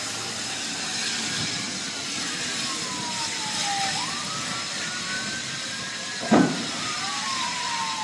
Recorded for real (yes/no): yes